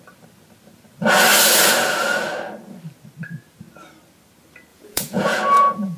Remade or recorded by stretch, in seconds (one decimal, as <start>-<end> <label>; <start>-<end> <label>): 0.0-4.7 recorded; 4.7-6.0 remade